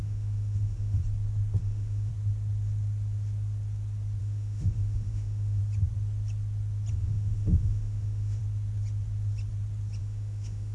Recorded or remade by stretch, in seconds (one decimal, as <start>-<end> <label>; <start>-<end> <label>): 0.0-1.0 remade; 1.0-1.6 recorded; 1.6-2.1 remade; 2.1-4.2 recorded; 4.2-5.6 remade; 5.6-6.9 recorded; 6.9-8.4 remade; 8.4-10.0 recorded; 10.0-10.7 remade